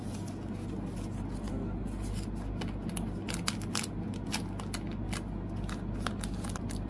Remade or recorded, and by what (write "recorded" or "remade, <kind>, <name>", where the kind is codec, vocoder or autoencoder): recorded